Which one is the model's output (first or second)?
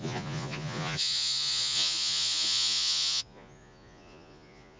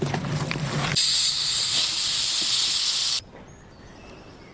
first